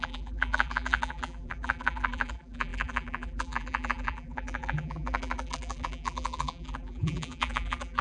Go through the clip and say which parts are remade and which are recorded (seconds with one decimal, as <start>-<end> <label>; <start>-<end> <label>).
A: 0.0-8.0 remade